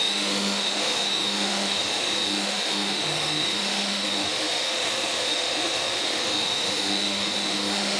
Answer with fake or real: fake